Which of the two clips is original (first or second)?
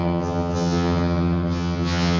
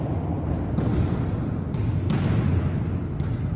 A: second